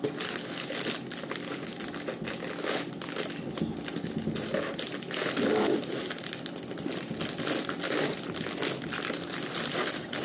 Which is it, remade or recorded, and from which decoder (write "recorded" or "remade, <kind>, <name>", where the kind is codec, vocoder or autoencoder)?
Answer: recorded